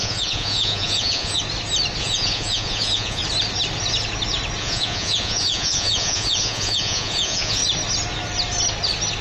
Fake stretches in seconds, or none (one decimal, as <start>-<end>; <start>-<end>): 0.0-1.4; 2.0-3.2; 4.6-7.6